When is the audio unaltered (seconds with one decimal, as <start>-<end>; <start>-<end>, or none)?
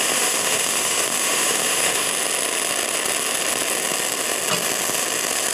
2.1-5.5